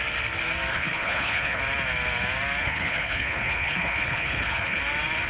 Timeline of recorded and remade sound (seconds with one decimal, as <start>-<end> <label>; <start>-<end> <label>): 0.0-0.7 recorded; 0.7-1.6 remade; 1.6-2.6 recorded; 2.6-4.8 remade; 4.8-5.3 recorded